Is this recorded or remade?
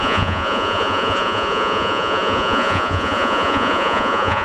remade